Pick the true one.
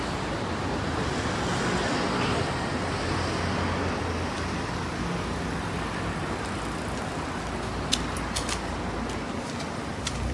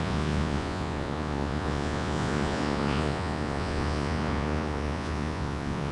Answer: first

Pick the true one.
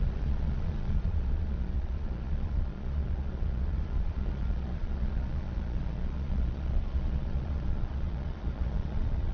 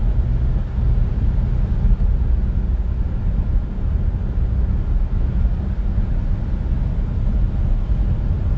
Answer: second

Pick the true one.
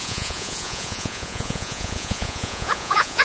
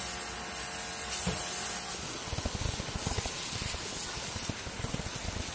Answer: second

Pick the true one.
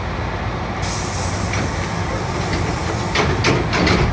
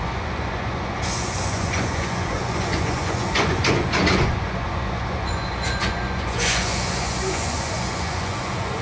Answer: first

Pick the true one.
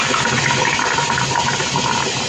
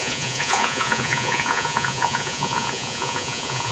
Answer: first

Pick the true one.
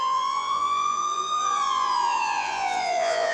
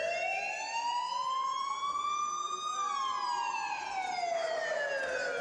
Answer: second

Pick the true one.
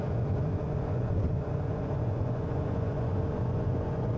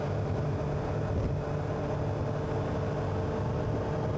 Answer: second